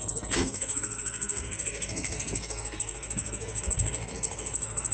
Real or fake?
fake